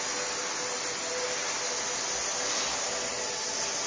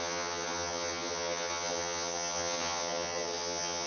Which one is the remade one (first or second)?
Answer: second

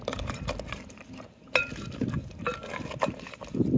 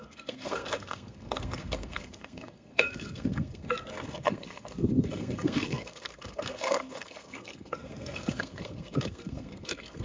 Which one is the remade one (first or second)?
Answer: second